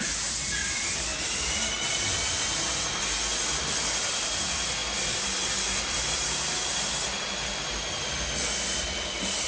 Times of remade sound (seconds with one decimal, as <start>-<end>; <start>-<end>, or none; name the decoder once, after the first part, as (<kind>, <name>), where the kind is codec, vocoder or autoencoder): none